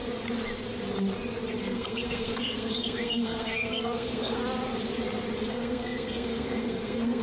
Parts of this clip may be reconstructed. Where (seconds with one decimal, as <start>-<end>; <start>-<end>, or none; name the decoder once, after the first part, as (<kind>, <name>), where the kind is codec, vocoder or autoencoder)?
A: 1.6-4.4 (codec, SNAC); 5.5-7.2